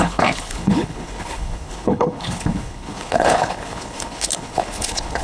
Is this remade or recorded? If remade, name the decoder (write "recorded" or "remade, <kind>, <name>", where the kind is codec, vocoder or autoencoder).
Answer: remade, codec, HILCodec